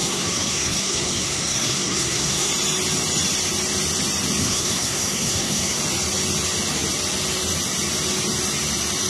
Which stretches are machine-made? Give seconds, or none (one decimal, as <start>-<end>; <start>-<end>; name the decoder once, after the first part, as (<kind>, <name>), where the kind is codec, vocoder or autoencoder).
0.0-2.5 (codec, SNAC); 4.4-5.8